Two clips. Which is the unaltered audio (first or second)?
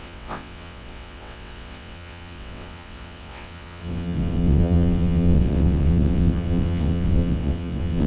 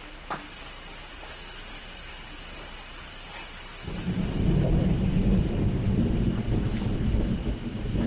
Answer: second